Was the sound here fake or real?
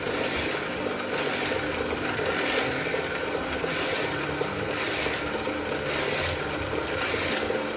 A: real